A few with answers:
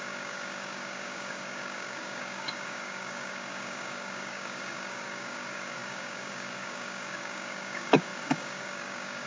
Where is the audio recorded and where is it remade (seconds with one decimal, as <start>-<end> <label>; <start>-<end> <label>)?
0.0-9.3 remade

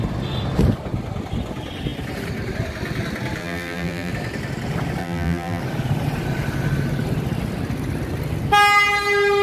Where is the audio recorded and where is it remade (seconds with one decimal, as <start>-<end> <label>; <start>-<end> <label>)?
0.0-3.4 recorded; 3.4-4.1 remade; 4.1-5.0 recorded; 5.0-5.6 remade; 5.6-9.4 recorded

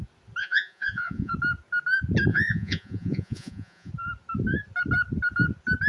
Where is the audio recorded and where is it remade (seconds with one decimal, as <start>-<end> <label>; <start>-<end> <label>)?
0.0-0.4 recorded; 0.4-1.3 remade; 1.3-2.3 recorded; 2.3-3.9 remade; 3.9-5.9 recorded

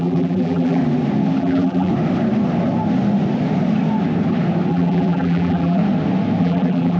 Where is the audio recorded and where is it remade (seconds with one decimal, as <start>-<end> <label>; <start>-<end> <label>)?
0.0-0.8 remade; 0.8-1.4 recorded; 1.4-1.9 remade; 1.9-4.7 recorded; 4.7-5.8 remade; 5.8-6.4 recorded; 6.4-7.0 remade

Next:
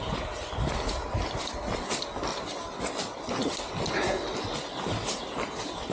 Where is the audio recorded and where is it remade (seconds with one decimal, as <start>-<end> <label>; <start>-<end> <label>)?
0.0-1.0 recorded; 1.0-1.6 remade; 1.6-2.3 recorded; 2.3-2.9 remade; 2.9-5.9 recorded

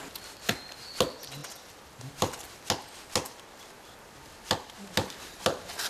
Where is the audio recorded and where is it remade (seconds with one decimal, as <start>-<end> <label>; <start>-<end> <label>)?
0.0-5.9 recorded

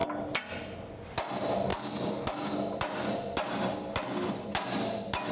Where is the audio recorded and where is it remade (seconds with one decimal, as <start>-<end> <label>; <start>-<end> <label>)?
0.0-5.3 recorded

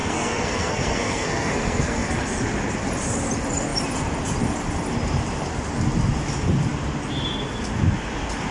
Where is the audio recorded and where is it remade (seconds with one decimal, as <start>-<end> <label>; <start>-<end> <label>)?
0.0-2.4 remade; 2.4-8.5 recorded